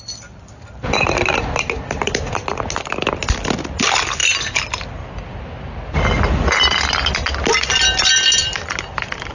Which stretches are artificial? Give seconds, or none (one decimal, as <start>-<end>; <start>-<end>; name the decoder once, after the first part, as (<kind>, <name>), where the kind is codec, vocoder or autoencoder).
none